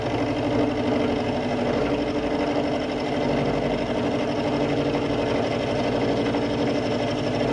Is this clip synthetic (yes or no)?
no